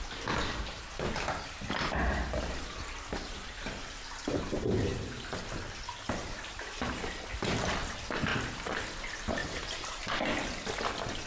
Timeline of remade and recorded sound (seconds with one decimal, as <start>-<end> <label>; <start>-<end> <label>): 0.0-9.4 recorded; 9.4-10.1 remade; 10.1-11.3 recorded